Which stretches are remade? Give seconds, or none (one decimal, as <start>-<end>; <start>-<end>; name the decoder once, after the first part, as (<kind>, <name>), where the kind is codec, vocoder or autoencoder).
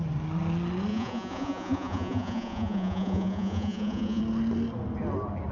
0.9-4.2 (vocoder, Vocos)